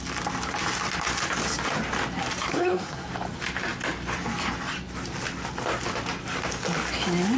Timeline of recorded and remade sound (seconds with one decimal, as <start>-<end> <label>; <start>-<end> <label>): 0.0-2.5 recorded; 2.5-3.1 remade; 3.1-7.4 recorded